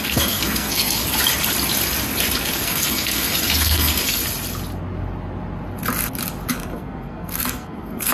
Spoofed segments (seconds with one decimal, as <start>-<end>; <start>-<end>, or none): 0.0-1.0; 2.4-4.2; 6.5-8.1